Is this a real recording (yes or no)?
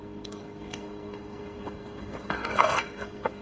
no